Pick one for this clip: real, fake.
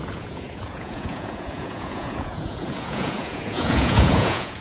fake